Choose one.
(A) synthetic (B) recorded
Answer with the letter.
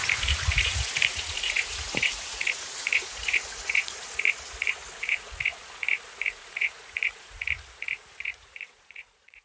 A